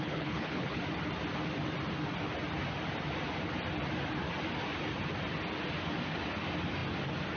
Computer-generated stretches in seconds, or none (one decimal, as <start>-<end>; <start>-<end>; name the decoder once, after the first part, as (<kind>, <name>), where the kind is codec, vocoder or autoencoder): 0.0-0.8 (codec, HILCodec)